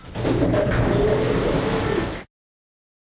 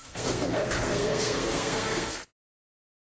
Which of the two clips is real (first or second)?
first